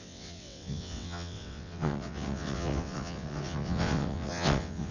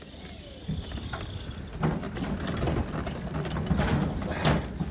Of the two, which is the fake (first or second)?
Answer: first